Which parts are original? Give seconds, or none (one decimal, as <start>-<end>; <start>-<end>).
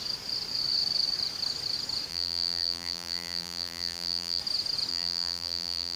0.0-2.1; 4.4-4.9